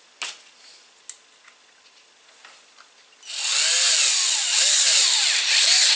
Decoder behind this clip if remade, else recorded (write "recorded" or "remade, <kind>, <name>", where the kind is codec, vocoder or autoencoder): recorded